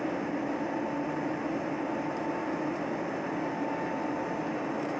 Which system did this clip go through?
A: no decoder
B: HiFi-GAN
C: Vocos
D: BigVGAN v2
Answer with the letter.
A